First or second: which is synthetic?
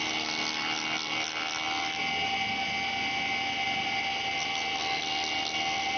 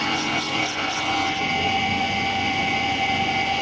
second